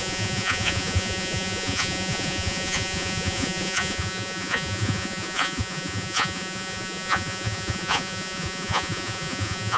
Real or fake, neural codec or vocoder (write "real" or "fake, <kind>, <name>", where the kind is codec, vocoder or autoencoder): fake, vocoder, Vocos